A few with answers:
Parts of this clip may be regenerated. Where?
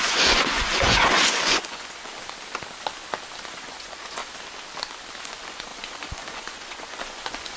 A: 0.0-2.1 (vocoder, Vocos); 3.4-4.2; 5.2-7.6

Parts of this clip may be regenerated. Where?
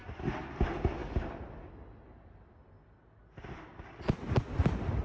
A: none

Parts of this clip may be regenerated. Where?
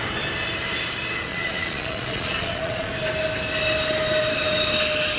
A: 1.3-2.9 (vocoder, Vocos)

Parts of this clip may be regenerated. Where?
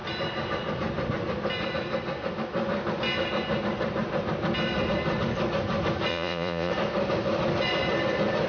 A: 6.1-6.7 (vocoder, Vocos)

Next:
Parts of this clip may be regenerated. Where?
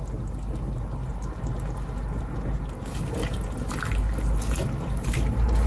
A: none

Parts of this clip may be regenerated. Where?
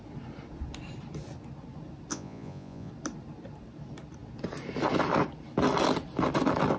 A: 2.1-2.9 (vocoder, Vocos)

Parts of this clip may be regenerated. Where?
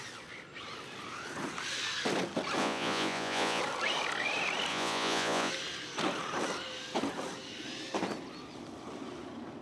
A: 2.6-3.6 (vocoder, Vocos); 4.7-5.5